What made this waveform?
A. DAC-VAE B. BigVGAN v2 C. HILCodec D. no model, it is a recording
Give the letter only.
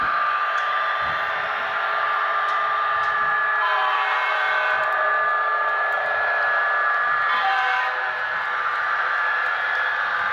B